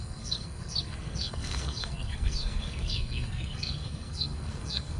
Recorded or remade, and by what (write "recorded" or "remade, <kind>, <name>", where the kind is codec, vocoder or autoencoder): remade, codec, SNAC